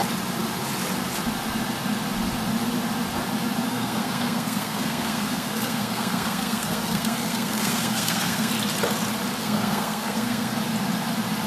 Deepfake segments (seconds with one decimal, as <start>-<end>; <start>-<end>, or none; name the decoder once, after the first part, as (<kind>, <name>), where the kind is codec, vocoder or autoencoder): 3.7-8.5 (codec, SNAC); 9.4-10.5